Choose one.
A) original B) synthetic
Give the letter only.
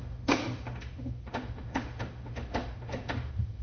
B